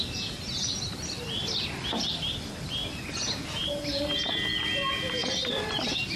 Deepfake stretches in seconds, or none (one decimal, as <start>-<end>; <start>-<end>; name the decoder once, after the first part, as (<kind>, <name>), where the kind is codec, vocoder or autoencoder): 5.2-5.8 (vocoder, BigVGAN v2)